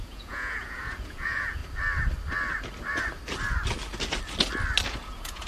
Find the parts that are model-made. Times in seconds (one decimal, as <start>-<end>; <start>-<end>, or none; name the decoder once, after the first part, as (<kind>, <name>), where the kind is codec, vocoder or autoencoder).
0.0-1.6 (vocoder, Vocos); 4.9-5.5